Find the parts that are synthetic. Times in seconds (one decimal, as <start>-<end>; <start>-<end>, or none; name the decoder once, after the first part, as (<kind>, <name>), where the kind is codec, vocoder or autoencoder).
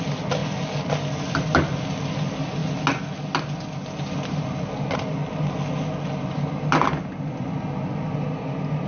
none